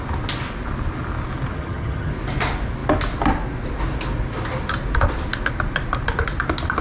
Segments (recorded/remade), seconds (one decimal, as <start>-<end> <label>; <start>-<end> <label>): 0.0-1.5 recorded; 1.5-2.1 remade; 2.1-6.8 recorded